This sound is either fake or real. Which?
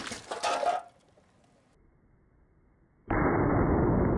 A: real